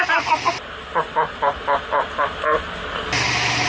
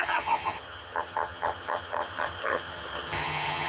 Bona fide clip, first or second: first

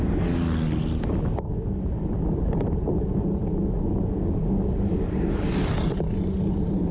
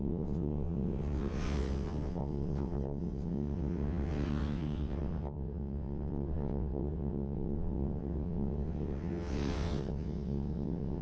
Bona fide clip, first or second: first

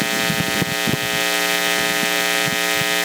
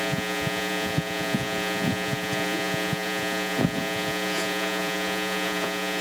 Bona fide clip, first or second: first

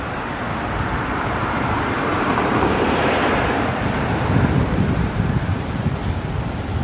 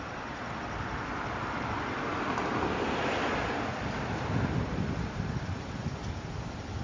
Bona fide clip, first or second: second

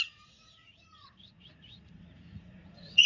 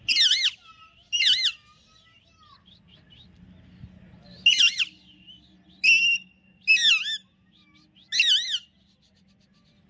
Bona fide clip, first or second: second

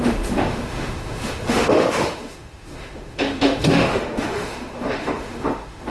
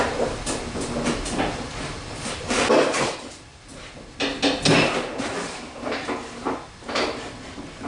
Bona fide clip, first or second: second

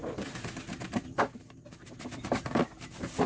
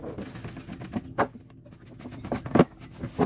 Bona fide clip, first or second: second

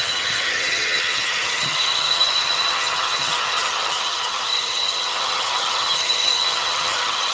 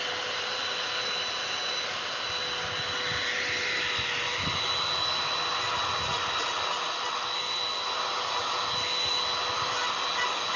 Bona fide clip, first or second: second